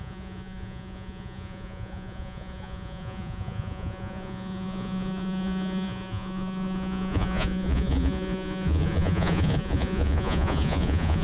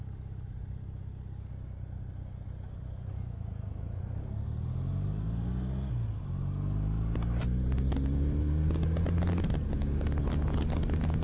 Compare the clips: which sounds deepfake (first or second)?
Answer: first